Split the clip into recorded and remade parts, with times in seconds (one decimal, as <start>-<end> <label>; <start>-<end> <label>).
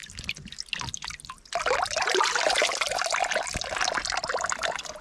0.0-5.0 recorded